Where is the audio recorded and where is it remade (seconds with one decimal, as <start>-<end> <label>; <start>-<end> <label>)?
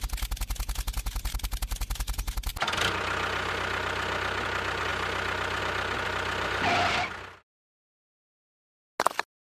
0.0-9.4 recorded